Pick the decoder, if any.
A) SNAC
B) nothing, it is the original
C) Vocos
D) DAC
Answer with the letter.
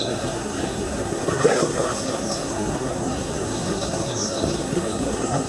A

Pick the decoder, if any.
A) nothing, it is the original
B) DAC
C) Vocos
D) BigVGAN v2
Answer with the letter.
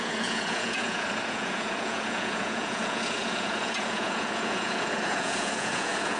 C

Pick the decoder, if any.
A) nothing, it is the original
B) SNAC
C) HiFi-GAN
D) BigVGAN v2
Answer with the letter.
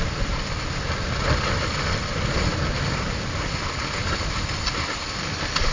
A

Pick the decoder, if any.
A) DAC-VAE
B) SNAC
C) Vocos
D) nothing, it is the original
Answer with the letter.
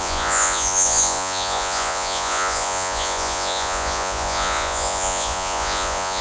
C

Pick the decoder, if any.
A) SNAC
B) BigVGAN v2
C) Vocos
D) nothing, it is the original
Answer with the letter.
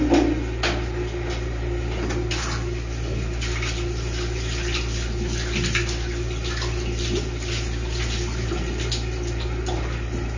D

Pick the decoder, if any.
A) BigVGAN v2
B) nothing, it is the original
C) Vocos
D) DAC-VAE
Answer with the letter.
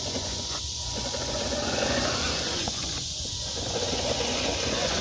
C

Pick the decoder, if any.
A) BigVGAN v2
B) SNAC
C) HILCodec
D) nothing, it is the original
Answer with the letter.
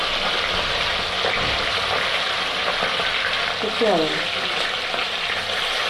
D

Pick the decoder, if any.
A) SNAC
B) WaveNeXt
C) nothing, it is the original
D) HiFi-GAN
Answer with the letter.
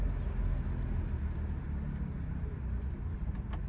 C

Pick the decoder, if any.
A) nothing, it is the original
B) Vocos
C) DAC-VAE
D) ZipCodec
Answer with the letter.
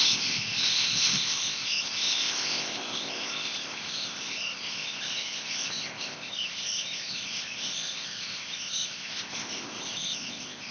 D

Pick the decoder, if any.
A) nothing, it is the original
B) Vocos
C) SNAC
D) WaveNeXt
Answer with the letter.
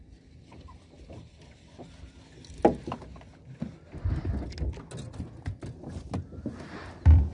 A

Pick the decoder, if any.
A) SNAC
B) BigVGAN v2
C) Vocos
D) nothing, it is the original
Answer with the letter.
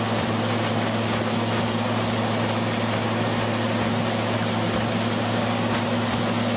B